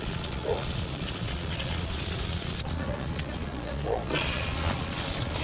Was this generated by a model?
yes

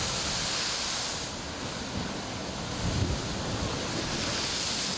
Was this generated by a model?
no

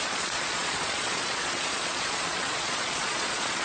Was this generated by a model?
yes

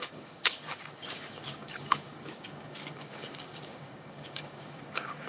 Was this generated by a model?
yes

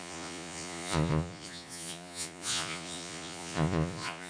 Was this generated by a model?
yes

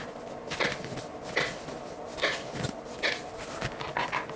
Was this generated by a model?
no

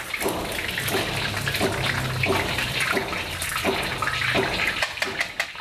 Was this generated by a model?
no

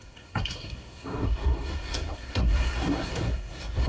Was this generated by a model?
yes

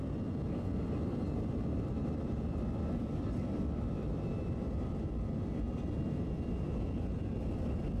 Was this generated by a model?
yes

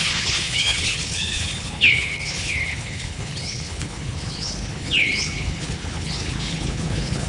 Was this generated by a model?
yes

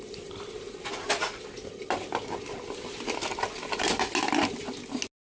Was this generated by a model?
no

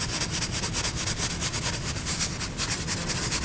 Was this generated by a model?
no